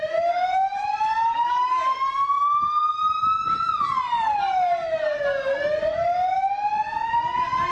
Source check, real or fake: real